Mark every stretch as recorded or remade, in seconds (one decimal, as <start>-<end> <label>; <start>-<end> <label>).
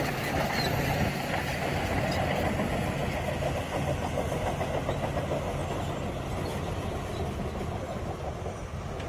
0.0-3.0 remade; 3.0-6.9 recorded; 6.9-9.1 remade